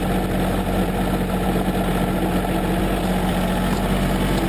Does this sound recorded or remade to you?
recorded